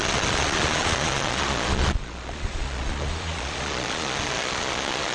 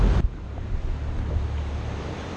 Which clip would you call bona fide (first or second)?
second